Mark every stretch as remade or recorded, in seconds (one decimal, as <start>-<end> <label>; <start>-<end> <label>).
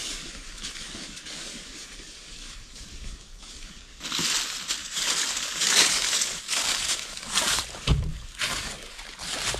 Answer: 0.0-4.0 remade; 4.0-4.8 recorded; 4.8-7.6 remade; 7.6-8.1 recorded; 8.1-9.0 remade; 9.0-9.6 recorded